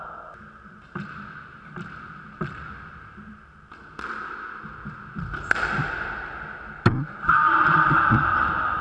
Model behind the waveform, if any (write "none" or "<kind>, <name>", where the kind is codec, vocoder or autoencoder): none